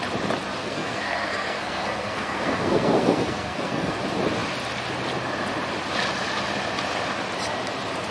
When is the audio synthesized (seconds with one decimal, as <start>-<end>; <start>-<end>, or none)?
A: 0.6-4.0